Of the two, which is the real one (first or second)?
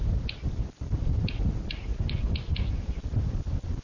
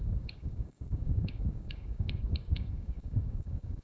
first